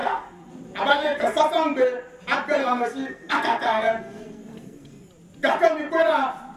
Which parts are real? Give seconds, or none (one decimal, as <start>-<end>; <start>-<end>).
0.5-0.9; 1.4-2.6; 5.1-6.6